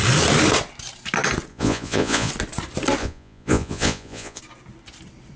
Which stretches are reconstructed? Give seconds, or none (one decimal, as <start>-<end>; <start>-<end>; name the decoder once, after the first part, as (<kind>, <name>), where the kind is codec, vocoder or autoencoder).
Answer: 1.5-2.3 (vocoder, Vocos); 3.0-4.4